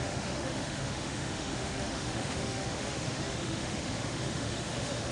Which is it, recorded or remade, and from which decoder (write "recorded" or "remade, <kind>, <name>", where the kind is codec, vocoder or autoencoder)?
remade, autoencoder, DAC-VAE